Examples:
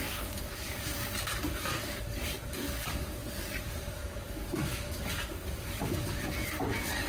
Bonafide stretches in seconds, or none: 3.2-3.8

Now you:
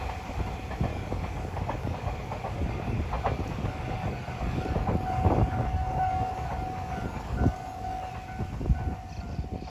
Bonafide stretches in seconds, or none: 0.0-0.9; 3.0-3.6; 8.1-9.7

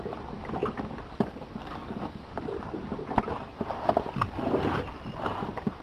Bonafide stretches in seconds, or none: 0.0-1.8; 2.5-5.8

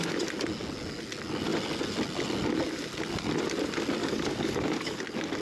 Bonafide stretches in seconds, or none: 0.0-4.0; 5.0-5.4

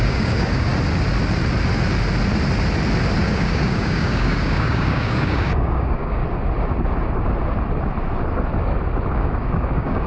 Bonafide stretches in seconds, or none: 0.7-3.2; 6.2-9.1

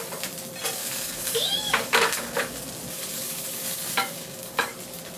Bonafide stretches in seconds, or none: 0.0-0.8; 2.6-3.1; 4.7-5.2

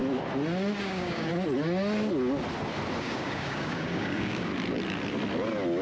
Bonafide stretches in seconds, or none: 0.0-0.8; 1.3-3.0; 4.5-5.8

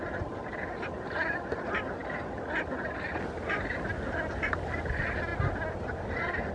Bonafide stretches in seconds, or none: 0.0-6.5